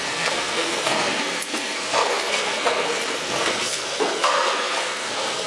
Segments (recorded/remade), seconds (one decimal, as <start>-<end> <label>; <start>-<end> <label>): 0.0-5.5 remade

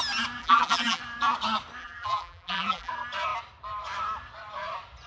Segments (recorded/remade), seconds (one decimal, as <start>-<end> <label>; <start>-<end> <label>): 0.0-0.4 recorded; 0.4-1.0 remade; 1.0-1.8 recorded; 1.8-2.9 remade; 2.9-5.1 recorded